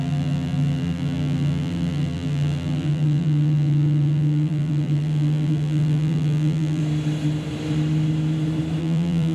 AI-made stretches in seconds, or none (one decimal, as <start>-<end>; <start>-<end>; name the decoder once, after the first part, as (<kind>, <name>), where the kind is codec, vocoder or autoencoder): 0.0-6.8 (vocoder, BigVGAN v2); 8.8-9.3